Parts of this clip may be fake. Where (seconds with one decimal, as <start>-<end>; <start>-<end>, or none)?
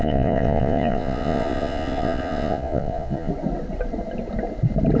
0.0-3.3